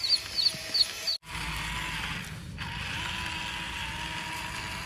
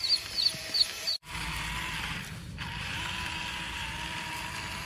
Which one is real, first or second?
first